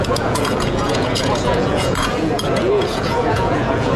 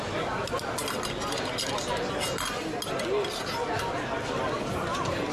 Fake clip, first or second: first